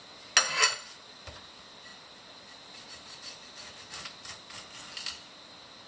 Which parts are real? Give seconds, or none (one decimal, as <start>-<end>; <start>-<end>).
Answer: 0.0-5.9